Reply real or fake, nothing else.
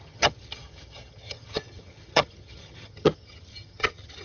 fake